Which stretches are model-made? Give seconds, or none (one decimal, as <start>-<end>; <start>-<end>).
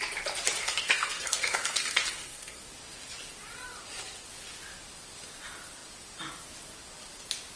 0.6-2.6